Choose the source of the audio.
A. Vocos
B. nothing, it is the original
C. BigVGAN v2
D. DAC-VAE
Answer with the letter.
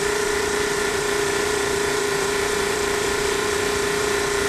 C